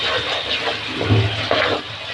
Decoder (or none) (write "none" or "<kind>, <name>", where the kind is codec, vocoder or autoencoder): none